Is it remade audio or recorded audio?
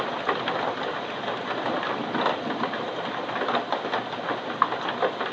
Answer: recorded